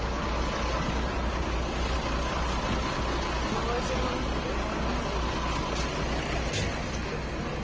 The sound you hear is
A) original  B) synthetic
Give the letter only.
A